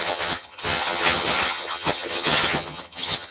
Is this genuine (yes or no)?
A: no